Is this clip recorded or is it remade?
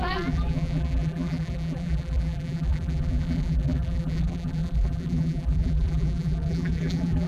remade